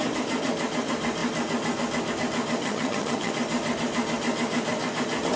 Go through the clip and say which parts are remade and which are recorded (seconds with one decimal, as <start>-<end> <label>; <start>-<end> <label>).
0.0-2.6 recorded; 2.6-3.3 remade; 3.3-5.4 recorded